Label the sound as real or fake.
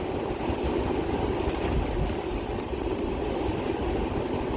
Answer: real